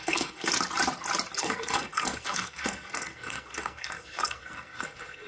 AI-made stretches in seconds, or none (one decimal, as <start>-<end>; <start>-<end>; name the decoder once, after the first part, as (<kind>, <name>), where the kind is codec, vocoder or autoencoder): 0.0-0.5 (codec, SNAC); 1.4-5.3